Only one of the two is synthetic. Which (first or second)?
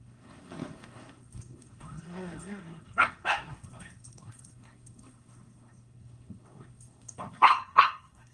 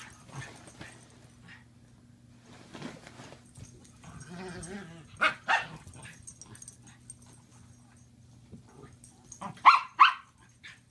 first